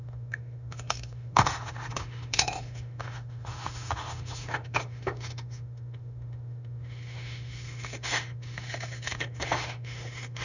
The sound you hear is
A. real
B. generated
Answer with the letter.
B